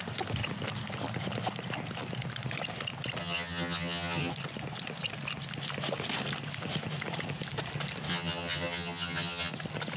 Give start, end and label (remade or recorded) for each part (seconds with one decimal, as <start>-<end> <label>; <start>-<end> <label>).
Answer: 0.0-3.2 recorded; 3.2-4.3 remade; 4.3-8.1 recorded; 8.1-9.5 remade; 9.5-10.0 recorded